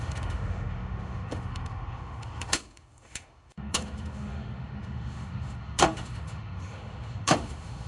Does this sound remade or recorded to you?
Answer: remade